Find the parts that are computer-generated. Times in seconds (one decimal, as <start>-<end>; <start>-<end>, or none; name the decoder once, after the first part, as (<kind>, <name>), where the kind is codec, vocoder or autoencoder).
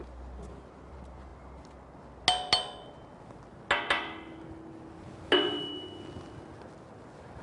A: none